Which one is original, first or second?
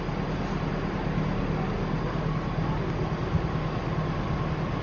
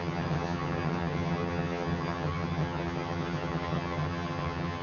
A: first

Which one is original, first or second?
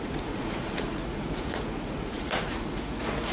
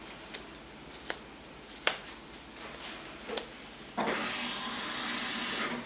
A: second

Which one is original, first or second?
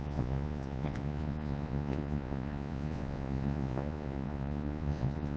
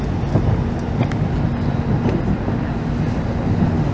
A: second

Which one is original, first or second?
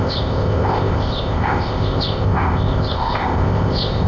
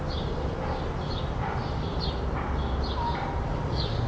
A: second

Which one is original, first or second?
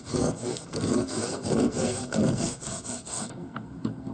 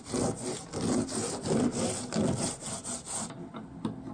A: second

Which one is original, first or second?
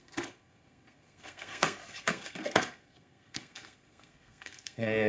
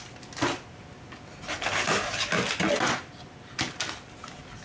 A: second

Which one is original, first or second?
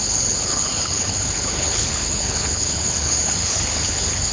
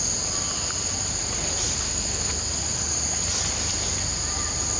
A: second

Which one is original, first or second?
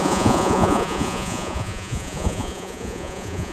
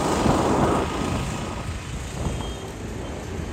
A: second